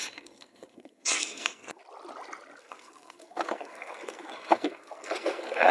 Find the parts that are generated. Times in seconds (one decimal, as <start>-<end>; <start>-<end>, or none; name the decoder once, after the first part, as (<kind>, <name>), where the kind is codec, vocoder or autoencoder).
0.0-1.8 (codec, SNAC); 2.6-5.7